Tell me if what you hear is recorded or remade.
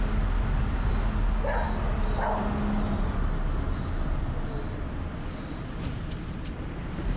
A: recorded